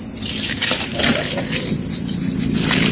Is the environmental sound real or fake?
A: real